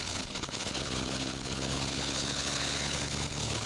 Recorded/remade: remade